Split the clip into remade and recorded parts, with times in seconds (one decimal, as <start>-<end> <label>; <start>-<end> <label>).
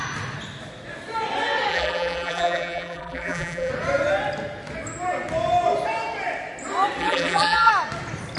0.0-1.7 recorded; 1.7-3.7 remade; 3.7-7.0 recorded; 7.0-7.7 remade; 7.7-8.4 recorded